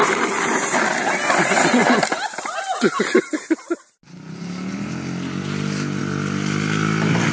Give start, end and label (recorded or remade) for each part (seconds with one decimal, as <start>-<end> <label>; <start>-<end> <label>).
0.0-7.3 recorded